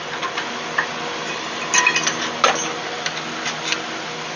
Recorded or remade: recorded